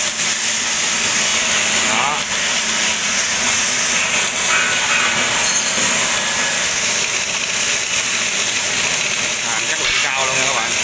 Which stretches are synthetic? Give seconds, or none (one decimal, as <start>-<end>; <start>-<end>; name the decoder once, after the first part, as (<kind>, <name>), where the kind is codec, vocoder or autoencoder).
3.0-3.6 (vocoder, Vocos)